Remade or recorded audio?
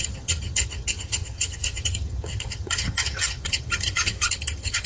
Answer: remade